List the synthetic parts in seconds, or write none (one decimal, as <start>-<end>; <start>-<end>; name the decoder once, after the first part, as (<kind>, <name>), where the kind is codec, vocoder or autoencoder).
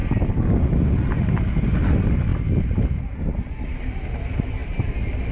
none